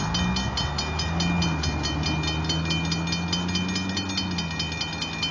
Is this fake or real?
real